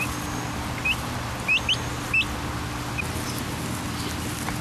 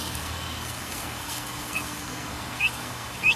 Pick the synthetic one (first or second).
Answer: second